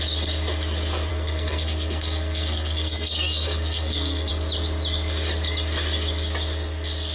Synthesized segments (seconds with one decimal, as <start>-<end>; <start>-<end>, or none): 1.1-4.3